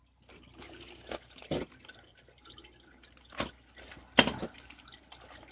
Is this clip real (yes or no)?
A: yes